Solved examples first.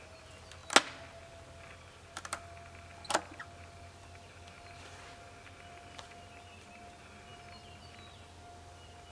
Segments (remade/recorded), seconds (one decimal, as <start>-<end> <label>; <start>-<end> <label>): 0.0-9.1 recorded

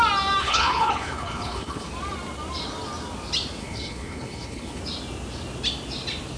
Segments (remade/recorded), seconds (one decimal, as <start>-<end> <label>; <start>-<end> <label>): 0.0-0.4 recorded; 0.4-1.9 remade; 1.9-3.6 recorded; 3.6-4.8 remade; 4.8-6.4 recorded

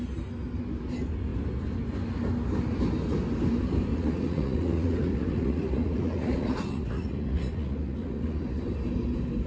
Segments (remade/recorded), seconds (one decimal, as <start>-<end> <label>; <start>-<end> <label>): 0.0-3.9 recorded; 3.9-8.6 remade; 8.6-9.5 recorded